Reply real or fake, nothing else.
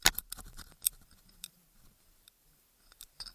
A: real